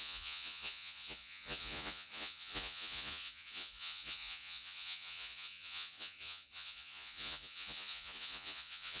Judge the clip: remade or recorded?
remade